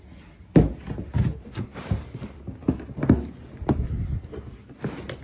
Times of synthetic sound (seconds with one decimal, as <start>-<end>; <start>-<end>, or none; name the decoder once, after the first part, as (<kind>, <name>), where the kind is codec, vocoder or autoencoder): none